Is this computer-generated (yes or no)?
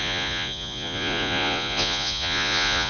yes